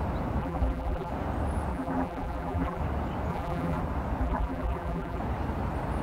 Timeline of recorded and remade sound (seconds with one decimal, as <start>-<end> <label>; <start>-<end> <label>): 0.0-0.4 recorded; 0.4-1.1 remade; 1.1-1.7 recorded; 1.7-2.8 remade; 2.8-3.3 recorded; 3.3-3.8 remade; 3.8-4.2 recorded; 4.2-5.2 remade; 5.2-6.0 recorded